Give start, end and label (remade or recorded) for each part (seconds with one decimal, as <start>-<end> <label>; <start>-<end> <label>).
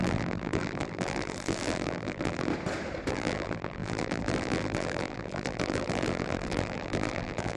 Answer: 0.0-2.5 remade; 2.5-3.1 recorded; 3.1-7.6 remade